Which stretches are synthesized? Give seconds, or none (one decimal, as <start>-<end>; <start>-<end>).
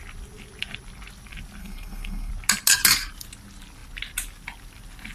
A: 1.6-2.3